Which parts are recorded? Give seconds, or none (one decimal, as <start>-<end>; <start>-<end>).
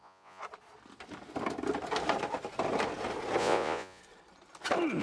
0.4-3.4; 4.0-5.0